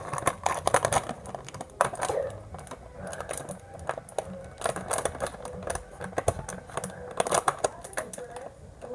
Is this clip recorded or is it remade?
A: recorded